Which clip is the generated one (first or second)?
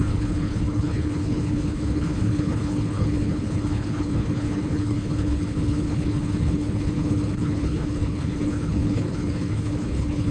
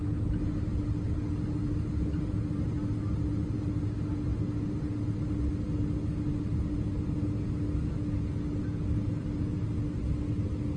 first